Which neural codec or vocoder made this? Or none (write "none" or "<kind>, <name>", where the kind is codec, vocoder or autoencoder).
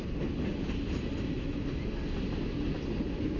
none